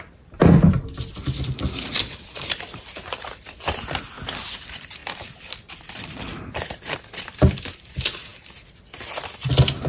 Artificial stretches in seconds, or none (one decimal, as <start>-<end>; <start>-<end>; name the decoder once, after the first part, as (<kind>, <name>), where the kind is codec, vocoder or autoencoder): none